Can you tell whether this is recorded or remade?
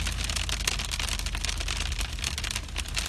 recorded